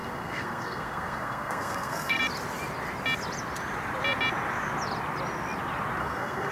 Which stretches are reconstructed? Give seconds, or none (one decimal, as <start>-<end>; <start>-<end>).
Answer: 0.0-2.2; 6.0-6.5